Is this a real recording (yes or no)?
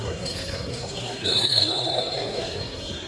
no